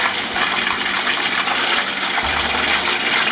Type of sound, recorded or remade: remade